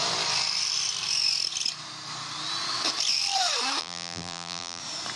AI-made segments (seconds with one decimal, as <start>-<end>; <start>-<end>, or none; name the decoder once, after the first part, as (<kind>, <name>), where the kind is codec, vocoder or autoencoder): 3.8-4.8 (vocoder, BigVGAN v2)